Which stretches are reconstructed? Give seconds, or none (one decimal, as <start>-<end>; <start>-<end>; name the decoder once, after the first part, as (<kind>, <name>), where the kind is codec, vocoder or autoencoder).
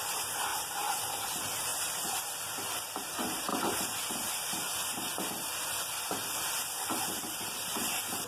0.5-1.1 (vocoder, BigVGAN v2); 1.7-2.3